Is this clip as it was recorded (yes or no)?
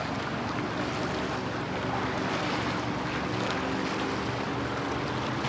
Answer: yes